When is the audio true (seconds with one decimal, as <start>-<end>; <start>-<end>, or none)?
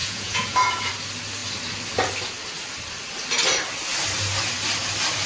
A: 0.9-5.3